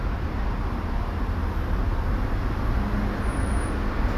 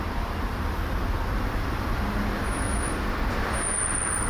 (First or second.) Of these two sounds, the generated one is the second